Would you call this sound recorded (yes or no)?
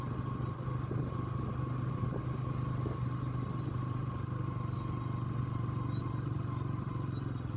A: yes